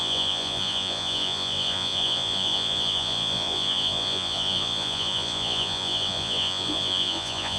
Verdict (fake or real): fake